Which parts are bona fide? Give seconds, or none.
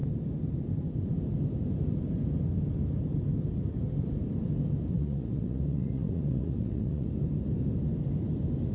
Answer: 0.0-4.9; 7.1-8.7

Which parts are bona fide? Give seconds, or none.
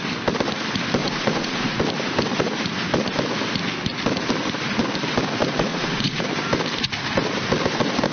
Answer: 0.0-1.0; 1.8-5.7; 6.2-8.1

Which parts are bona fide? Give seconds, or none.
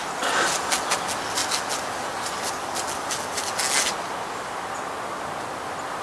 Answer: 0.0-6.0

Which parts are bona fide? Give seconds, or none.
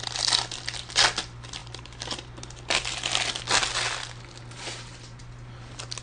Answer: 0.0-6.0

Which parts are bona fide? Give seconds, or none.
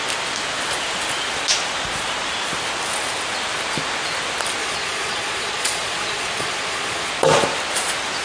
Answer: 0.0-4.6; 7.1-8.2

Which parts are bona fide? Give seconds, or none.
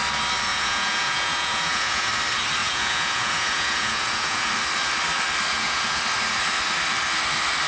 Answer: 0.0-0.5; 2.1-2.6; 4.5-5.5; 6.0-7.7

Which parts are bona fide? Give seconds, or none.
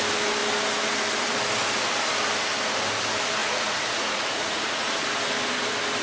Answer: 0.0-3.4; 4.9-6.0